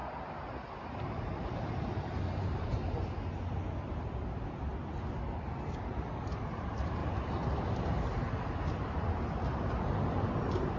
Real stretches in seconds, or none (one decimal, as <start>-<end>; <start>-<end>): 0.0-0.8; 2.7-6.2; 7.0-7.9